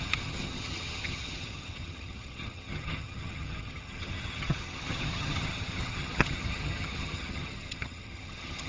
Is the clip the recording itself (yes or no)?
no